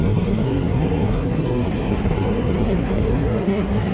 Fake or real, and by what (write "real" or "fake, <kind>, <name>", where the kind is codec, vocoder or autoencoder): fake, codec, SNAC